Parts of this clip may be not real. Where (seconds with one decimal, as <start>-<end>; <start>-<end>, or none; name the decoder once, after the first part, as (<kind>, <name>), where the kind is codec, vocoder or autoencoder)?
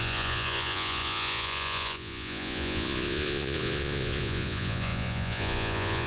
0.0-6.1 (vocoder, Vocos)